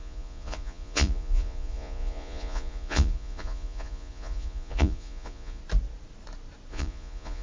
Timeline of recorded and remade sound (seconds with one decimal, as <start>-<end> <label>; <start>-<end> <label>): 0.0-5.6 remade; 5.6-6.7 recorded; 6.7-7.4 remade